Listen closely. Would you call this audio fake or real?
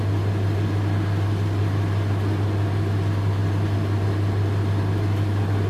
real